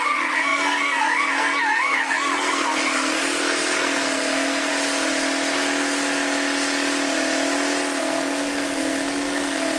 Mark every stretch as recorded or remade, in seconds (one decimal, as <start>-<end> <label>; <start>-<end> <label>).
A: 0.0-4.7 remade; 4.7-8.0 recorded; 8.0-9.8 remade